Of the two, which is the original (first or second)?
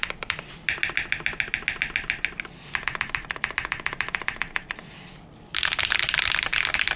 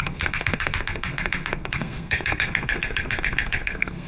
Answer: first